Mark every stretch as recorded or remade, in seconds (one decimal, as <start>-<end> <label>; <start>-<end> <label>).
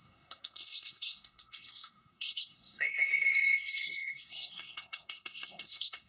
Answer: 0.0-6.1 remade